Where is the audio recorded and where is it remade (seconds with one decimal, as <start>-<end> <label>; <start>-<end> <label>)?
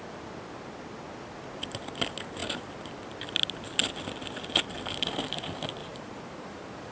0.0-5.8 recorded; 5.8-6.9 remade